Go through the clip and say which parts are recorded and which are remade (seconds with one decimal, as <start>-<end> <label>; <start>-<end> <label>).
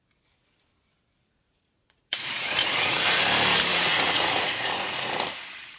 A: 0.0-1.3 recorded; 1.3-3.2 remade; 3.2-3.7 recorded; 3.7-5.8 remade